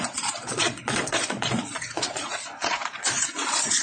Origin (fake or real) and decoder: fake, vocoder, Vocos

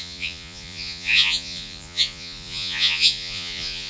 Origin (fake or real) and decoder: fake, vocoder, Vocos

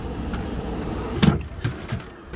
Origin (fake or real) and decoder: real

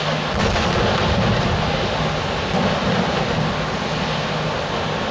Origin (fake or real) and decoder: real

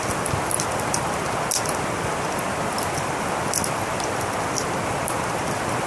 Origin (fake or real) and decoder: real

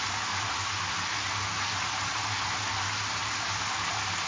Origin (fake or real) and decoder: real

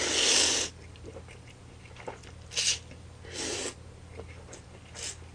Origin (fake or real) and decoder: real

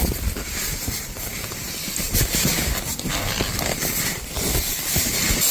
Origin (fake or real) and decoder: real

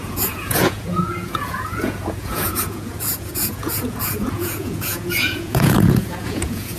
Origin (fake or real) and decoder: fake, vocoder, Vocos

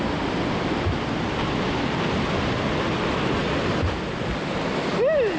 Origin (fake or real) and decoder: real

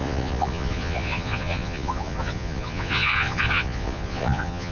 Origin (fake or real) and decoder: fake, vocoder, Vocos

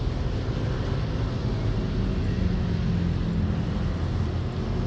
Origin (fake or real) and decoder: real